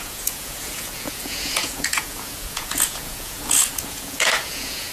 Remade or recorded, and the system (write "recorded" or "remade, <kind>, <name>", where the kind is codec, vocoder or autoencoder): remade, vocoder, Vocos